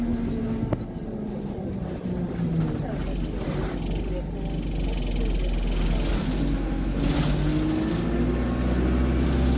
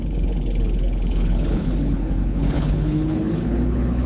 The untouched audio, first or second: first